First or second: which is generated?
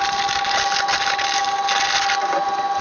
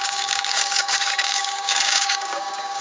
second